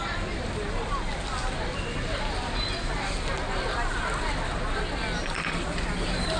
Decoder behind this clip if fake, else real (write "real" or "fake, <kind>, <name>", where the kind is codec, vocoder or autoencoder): real